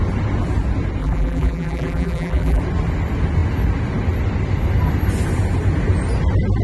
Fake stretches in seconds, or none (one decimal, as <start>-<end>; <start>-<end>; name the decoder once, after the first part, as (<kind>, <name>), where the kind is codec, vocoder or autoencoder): 1.0-2.6 (vocoder, BigVGAN v2)